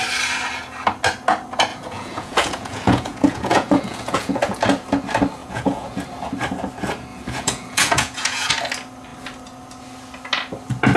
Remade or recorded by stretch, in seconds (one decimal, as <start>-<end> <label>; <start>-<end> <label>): 0.0-1.7 recorded; 1.7-4.6 remade; 4.6-5.4 recorded; 5.4-6.0 remade; 6.0-7.1 recorded; 7.1-8.5 remade; 8.5-11.0 recorded